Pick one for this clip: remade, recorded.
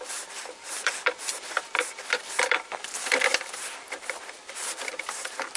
remade